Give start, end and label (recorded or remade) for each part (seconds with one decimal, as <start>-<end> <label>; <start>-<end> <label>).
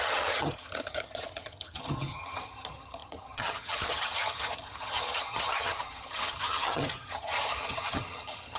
0.0-8.6 remade